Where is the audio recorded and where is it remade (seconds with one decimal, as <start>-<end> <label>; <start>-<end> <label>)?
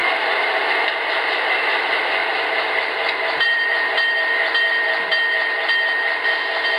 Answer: 0.0-1.4 remade; 1.4-2.2 recorded; 2.2-6.3 remade; 6.3-6.8 recorded